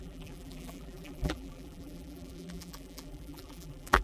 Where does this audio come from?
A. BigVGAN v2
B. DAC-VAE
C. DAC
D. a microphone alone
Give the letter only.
A